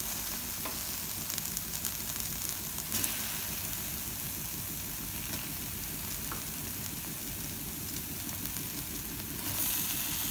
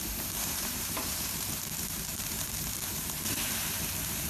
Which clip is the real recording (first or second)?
first